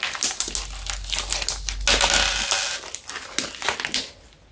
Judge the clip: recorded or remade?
recorded